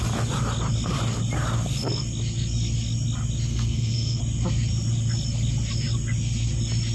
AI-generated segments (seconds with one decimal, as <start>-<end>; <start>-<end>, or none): 3.5-4.2